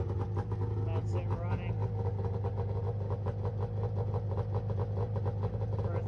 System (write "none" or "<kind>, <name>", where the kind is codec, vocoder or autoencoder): none